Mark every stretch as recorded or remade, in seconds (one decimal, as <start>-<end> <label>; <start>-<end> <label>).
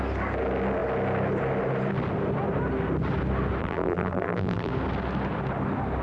0.0-3.6 recorded; 3.6-4.7 remade; 4.7-6.0 recorded